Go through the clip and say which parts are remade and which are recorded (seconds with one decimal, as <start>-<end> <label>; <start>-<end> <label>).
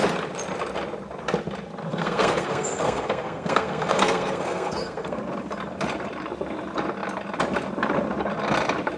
0.0-1.9 recorded; 1.9-5.2 remade; 5.2-9.0 recorded